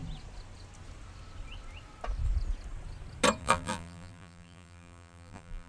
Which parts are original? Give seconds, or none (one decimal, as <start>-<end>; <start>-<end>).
0.0-3.4